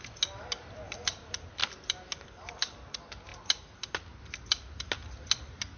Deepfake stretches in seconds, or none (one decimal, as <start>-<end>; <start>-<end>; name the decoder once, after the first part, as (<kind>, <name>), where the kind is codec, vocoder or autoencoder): none